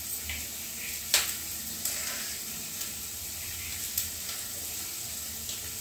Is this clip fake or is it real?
real